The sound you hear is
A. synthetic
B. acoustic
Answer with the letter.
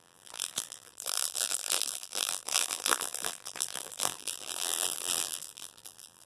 A